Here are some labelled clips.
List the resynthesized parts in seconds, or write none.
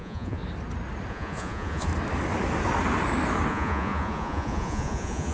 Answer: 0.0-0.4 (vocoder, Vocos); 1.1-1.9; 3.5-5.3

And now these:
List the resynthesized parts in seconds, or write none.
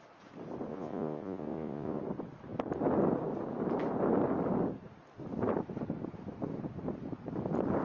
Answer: 0.7-2.0 (vocoder, Vocos)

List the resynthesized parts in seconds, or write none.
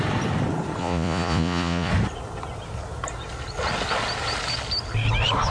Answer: 0.8-1.9 (vocoder, Vocos)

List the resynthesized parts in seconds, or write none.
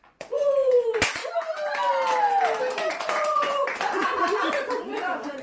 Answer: 0.0-1.2 (vocoder, Vocos); 2.9-4.0; 4.8-5.4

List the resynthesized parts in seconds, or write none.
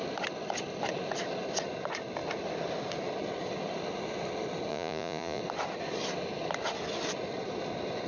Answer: 4.7-5.4 (vocoder, Vocos)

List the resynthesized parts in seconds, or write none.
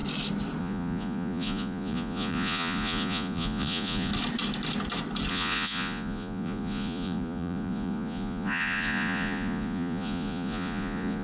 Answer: 0.6-4.1 (vocoder, Vocos); 5.3-11.2